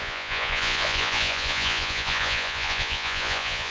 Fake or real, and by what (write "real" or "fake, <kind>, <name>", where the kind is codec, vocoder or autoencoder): fake, vocoder, Vocos